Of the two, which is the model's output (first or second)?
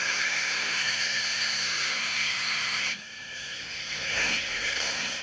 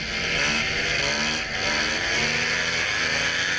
first